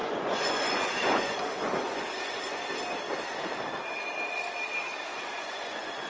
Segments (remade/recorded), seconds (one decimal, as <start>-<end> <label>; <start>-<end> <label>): 0.0-2.6 remade; 2.6-5.1 recorded; 5.1-6.1 remade

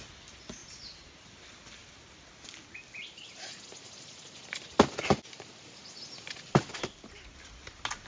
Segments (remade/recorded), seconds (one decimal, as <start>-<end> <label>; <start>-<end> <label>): 0.0-8.1 recorded

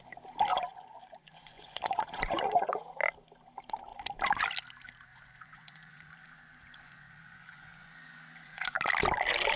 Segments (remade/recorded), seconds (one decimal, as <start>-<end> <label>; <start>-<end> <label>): 0.0-0.5 recorded; 0.5-2.8 remade; 2.8-5.1 recorded; 5.1-8.8 remade; 8.8-9.6 recorded